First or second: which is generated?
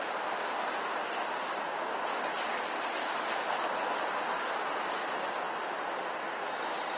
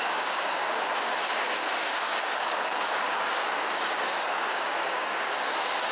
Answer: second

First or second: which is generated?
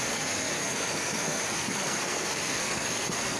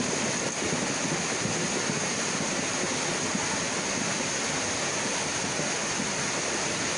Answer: first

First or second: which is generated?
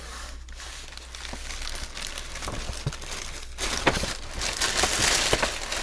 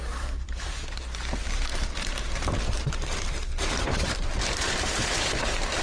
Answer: second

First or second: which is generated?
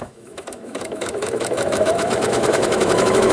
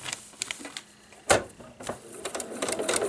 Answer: first